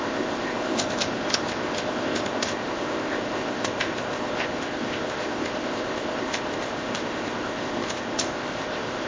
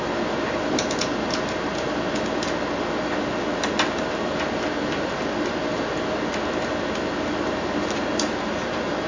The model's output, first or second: first